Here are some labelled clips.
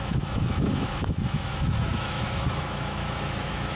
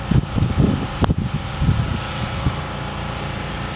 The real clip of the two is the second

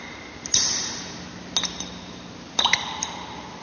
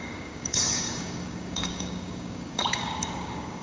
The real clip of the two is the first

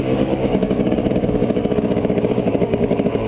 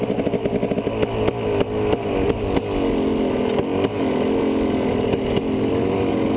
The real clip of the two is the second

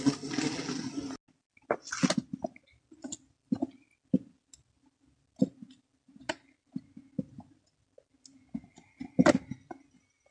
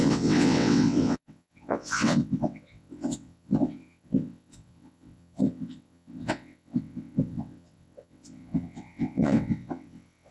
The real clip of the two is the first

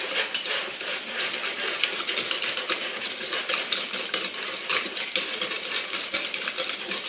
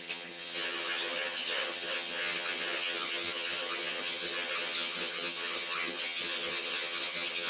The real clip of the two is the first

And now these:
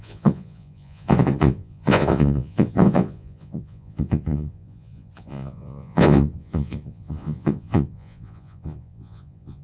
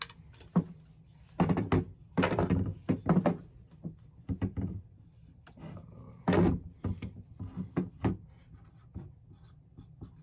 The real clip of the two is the second